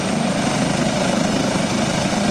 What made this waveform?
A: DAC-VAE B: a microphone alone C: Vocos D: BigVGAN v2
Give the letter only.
D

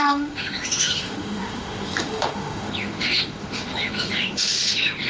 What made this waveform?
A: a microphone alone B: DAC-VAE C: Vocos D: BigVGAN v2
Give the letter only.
B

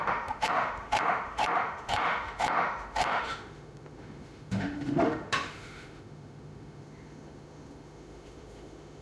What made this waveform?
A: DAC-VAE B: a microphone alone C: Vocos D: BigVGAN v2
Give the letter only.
A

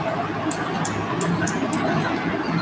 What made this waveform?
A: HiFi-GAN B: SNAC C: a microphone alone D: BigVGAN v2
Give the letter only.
C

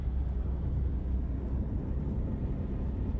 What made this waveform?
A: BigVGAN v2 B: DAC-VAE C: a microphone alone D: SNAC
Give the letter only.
C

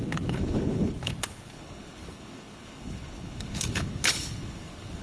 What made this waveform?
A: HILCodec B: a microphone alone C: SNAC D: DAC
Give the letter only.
A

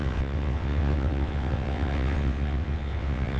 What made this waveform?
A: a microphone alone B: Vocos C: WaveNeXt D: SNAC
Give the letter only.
C